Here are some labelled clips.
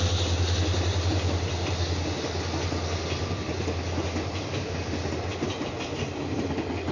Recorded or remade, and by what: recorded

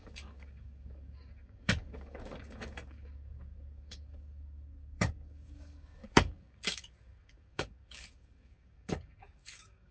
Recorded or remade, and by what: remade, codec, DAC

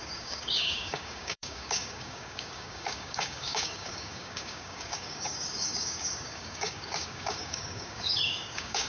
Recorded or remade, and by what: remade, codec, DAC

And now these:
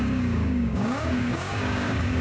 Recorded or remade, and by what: remade, codec, DAC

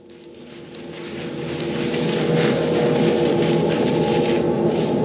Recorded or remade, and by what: recorded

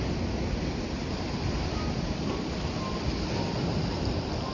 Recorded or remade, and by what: recorded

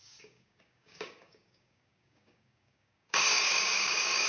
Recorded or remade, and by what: remade, codec, DAC